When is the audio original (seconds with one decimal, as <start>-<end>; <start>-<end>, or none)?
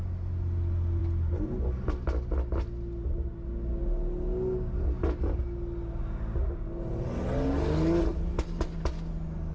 0.0-9.5